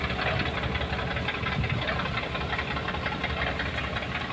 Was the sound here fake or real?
real